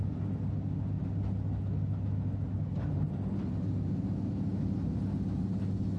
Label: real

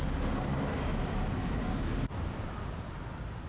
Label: real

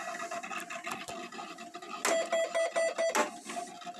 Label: real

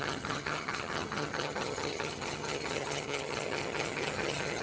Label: fake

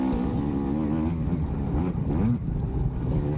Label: real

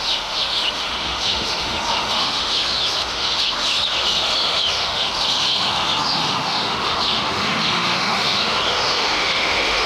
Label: fake